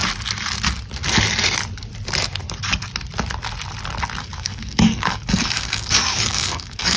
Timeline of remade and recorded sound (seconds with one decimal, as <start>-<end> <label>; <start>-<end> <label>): 0.0-4.2 recorded; 4.2-7.0 remade